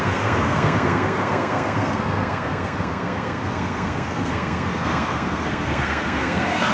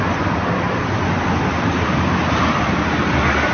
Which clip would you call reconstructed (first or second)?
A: first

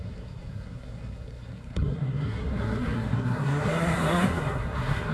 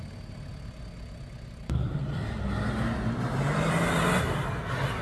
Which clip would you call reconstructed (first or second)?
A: first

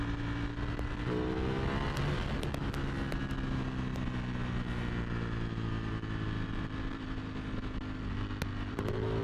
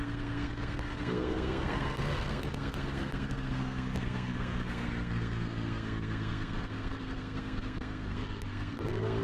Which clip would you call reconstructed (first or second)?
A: second